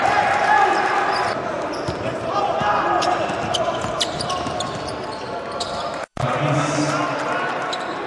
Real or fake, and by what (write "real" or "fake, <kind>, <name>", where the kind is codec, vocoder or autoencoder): real